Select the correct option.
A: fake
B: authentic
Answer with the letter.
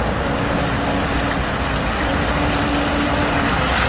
B